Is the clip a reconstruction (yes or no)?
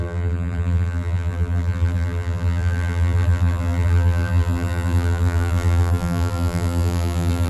yes